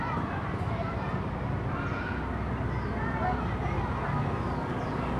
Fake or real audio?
real